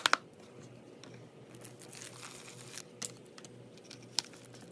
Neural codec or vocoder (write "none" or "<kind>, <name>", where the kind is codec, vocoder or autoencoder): none